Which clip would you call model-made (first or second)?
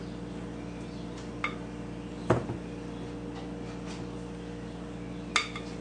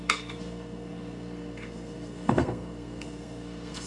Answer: second